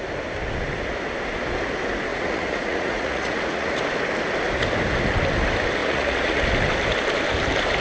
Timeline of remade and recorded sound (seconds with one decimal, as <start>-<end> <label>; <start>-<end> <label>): 0.0-2.1 recorded; 2.1-3.8 remade; 3.8-5.8 recorded; 5.8-6.4 remade; 6.4-7.8 recorded